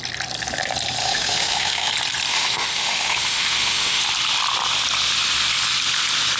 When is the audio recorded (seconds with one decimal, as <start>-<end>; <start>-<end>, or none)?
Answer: 0.0-1.0; 1.9-2.3; 4.0-6.4